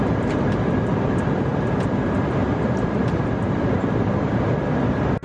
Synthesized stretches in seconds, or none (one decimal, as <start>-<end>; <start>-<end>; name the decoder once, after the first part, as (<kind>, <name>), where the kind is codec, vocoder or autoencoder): none